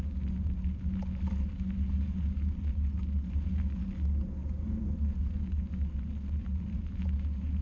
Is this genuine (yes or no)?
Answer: yes